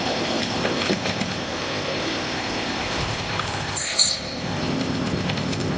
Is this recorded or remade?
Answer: remade